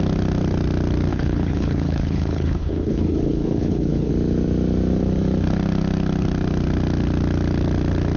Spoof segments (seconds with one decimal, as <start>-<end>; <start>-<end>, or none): 1.1-4.1